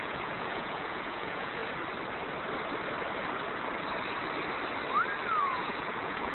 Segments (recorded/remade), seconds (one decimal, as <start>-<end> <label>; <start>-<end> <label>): 0.0-1.6 remade; 1.6-5.4 recorded; 5.4-6.3 remade